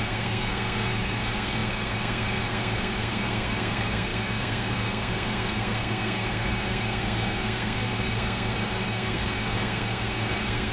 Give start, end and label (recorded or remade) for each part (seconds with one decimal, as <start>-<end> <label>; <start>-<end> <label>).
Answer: 0.0-10.7 remade